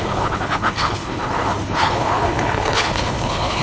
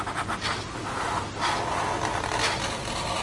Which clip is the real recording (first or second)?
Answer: second